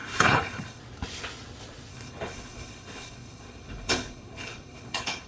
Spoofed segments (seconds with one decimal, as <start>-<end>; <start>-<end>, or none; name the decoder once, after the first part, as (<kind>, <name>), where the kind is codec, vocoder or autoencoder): 0.0-0.8 (codec, HILCodec); 1.9-5.3